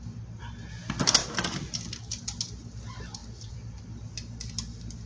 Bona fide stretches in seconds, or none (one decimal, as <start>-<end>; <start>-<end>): 0.0-1.2; 2.1-3.2; 3.8-5.1